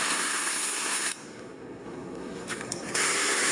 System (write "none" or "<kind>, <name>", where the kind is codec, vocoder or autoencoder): codec, SNAC